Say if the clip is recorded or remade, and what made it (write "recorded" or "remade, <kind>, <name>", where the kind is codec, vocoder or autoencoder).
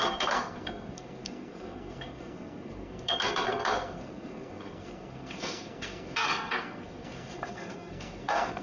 remade, codec, SNAC